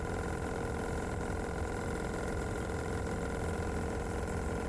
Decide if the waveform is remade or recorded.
remade